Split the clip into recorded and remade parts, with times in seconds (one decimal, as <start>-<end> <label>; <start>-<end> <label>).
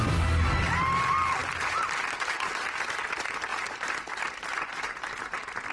0.0-5.7 recorded